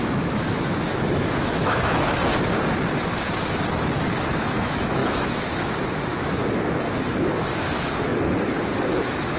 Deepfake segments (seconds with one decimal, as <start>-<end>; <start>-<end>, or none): 0.0-2.2; 4.3-8.1; 8.8-9.4